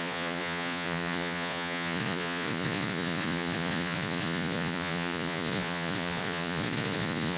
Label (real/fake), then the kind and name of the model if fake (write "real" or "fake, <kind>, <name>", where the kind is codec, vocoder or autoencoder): fake, vocoder, Vocos